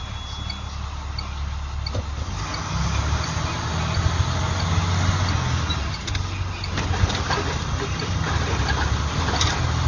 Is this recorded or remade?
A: recorded